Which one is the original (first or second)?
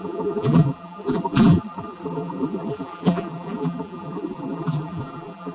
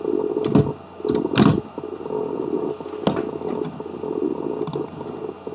second